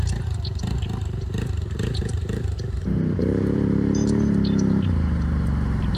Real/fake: fake